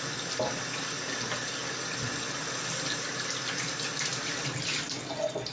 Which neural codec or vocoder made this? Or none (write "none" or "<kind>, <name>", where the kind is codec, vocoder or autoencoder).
none